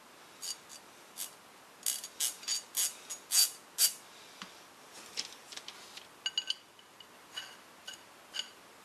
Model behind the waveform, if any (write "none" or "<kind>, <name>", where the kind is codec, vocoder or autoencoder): none